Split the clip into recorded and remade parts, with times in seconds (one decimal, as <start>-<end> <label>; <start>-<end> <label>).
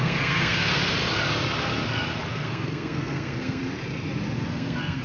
0.0-0.8 remade; 0.8-2.3 recorded; 2.3-3.6 remade; 3.6-4.5 recorded; 4.5-5.0 remade